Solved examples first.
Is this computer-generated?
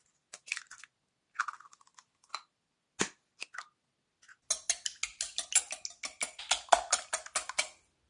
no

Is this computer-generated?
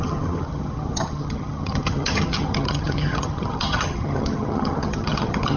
yes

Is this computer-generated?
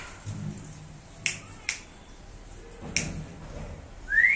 no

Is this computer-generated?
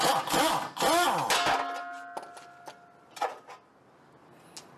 no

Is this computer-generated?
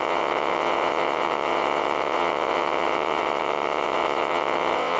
yes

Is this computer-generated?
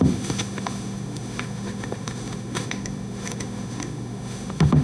yes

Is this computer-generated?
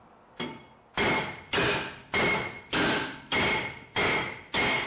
no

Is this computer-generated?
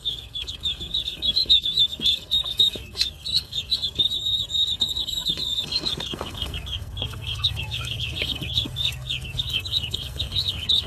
yes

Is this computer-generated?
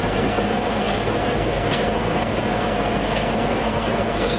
yes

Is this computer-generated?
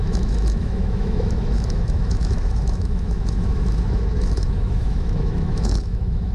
yes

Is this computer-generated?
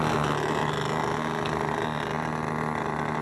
no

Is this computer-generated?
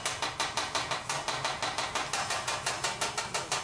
no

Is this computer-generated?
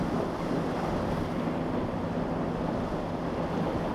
no